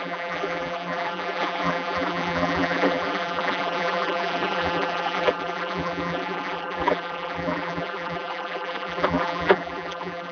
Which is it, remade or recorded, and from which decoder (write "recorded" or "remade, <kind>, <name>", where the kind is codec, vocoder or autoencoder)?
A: remade, vocoder, BigVGAN v2